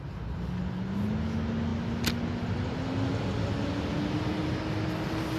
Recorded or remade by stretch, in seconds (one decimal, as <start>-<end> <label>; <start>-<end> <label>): 0.0-5.4 recorded